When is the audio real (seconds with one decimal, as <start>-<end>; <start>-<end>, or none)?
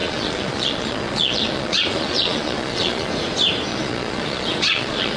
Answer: 3.1-3.7